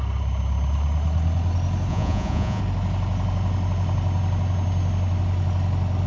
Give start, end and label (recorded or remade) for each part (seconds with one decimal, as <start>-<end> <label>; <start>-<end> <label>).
0.0-1.9 recorded; 1.9-2.6 remade; 2.6-6.1 recorded